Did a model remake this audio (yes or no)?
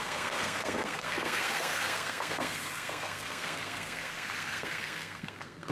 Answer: yes